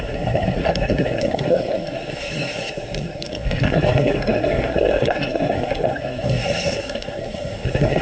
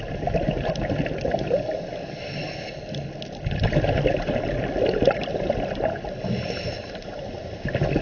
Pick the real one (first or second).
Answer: second